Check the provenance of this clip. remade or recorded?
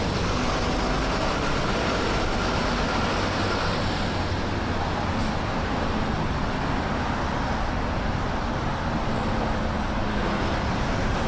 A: recorded